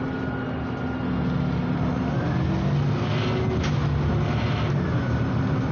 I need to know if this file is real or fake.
real